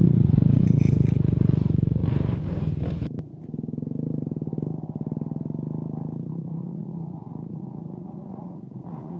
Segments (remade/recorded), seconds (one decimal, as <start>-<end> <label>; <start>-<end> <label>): 0.0-2.0 remade; 2.0-6.3 recorded; 6.3-9.2 remade

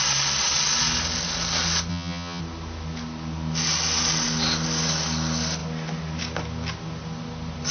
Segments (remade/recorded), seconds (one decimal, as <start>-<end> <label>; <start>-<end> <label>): 0.0-1.9 recorded; 1.9-2.4 remade; 2.4-7.7 recorded

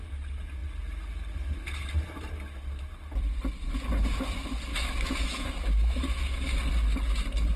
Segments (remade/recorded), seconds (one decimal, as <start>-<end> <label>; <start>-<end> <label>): 0.0-4.7 recorded; 4.7-6.6 remade; 6.6-7.6 recorded

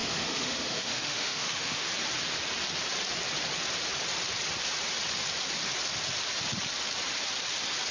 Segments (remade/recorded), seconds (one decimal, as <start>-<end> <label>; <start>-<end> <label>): 0.0-1.9 remade; 1.9-7.9 recorded